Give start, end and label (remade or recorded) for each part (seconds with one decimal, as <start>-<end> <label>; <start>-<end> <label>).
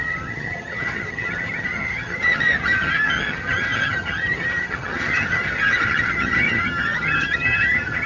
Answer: 0.0-8.1 remade